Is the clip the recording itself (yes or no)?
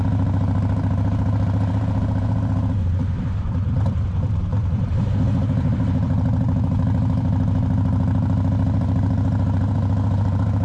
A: no